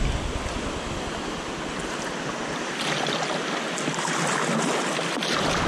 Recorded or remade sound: recorded